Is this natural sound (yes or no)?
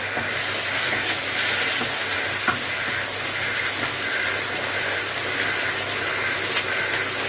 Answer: yes